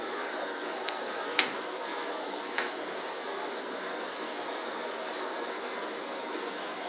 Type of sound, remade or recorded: remade